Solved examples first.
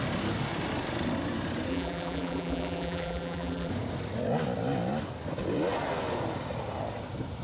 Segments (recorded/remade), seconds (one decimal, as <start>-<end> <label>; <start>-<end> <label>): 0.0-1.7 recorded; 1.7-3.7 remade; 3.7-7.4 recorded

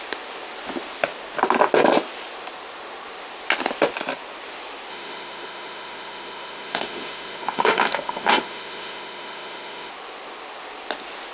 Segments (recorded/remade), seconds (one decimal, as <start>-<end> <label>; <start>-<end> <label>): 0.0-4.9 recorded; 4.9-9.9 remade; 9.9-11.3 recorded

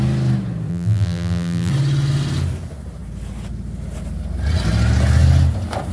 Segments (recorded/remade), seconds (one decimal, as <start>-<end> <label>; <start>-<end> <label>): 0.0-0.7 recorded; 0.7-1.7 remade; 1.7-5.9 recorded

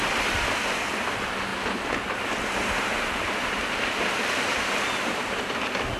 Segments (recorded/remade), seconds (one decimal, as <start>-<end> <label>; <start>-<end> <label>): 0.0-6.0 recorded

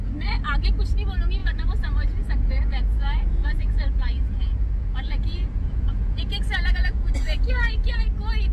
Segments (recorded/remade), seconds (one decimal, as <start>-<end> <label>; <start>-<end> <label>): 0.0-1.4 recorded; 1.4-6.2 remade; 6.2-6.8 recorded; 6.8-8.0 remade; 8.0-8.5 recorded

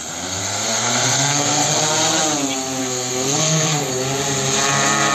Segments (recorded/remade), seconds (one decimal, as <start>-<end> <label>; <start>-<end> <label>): 0.0-0.4 recorded; 0.4-1.8 remade; 1.8-2.8 recorded; 2.8-3.9 remade; 3.9-5.1 recorded